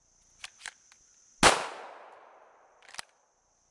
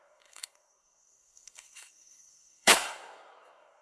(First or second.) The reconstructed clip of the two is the second